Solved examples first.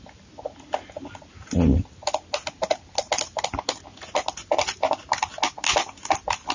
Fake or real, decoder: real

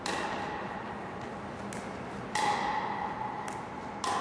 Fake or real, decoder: real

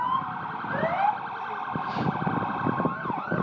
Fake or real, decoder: real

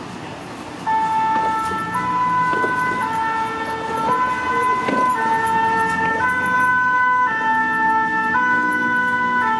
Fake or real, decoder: real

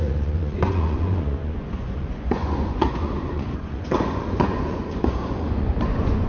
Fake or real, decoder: fake, vocoder, Vocos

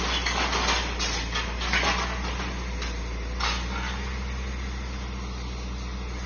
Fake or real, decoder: real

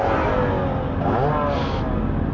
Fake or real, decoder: real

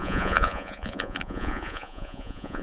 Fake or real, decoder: fake, vocoder, Vocos